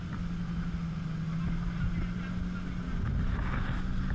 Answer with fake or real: real